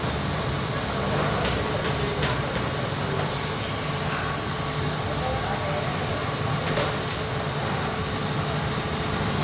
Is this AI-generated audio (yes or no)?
no